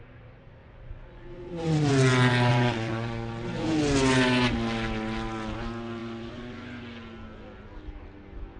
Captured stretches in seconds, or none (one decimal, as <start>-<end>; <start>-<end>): 0.0-0.6; 1.9-2.5; 3.8-6.0; 6.8-8.6